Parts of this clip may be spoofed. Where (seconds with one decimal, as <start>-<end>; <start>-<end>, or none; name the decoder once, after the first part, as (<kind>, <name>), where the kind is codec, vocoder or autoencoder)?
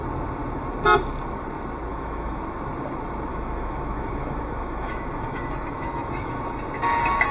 1.9-2.4 (autoencoder, DAC-VAE); 3.3-6.4